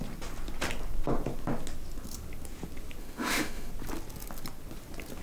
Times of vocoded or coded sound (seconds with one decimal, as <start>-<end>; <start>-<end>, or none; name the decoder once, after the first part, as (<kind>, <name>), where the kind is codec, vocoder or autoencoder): 3.0-3.7 (autoencoder, DAC-VAE)